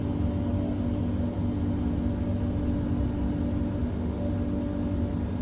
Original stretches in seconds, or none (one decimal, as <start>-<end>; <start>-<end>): 0.0-3.8; 4.3-5.4

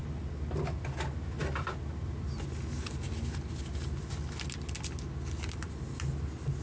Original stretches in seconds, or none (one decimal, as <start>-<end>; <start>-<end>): 0.0-6.6

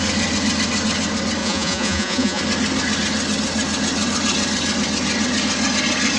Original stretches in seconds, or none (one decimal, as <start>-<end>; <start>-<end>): 0.0-1.4; 2.4-6.2